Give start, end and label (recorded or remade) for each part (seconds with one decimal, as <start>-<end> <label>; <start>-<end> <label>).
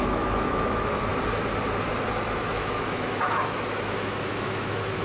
0.0-1.1 remade; 1.1-2.2 recorded; 2.2-5.0 remade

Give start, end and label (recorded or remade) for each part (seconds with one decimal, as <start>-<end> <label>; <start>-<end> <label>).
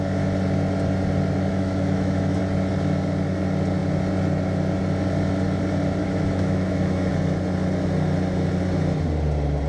0.0-1.5 recorded; 1.5-2.4 remade; 2.4-6.0 recorded; 6.0-7.1 remade; 7.1-9.7 recorded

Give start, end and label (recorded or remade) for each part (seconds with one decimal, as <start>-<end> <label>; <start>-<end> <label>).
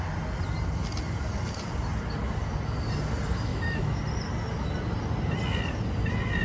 0.0-3.5 recorded; 3.5-4.0 remade; 4.0-6.4 recorded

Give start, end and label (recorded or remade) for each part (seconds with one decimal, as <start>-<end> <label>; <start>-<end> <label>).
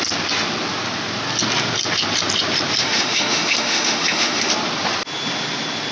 0.0-2.8 recorded; 2.8-4.5 remade; 4.5-5.9 recorded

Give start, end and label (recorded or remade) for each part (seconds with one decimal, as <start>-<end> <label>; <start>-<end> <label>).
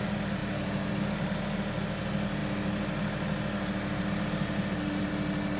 0.0-5.6 recorded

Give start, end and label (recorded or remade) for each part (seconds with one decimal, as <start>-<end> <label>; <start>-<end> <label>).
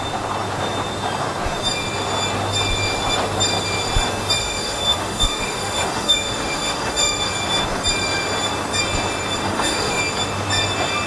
0.0-4.4 recorded; 4.4-7.3 remade; 7.3-9.4 recorded; 9.4-10.0 remade; 10.0-11.1 recorded